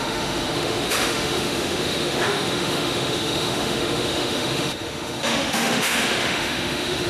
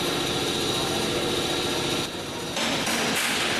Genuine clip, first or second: second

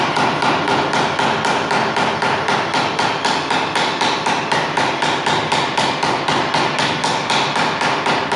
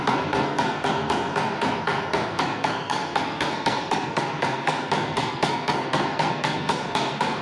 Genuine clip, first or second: first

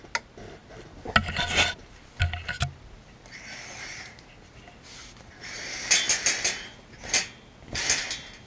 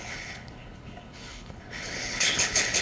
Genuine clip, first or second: first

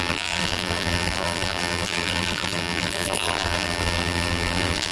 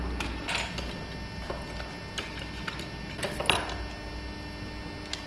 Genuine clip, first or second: second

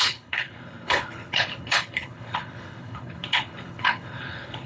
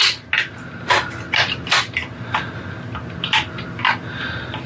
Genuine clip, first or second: second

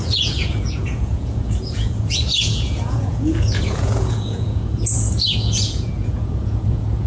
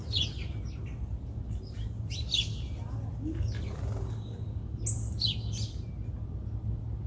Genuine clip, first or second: second